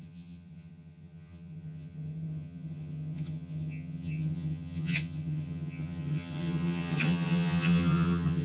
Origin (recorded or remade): remade